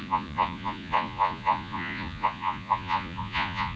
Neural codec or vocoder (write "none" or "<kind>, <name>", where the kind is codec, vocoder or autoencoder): vocoder, Vocos